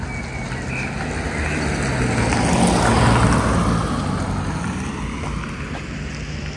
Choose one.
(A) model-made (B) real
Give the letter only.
B